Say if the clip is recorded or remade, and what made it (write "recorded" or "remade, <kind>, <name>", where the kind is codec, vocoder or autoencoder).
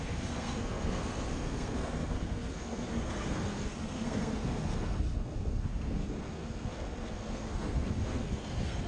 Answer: remade, codec, SNAC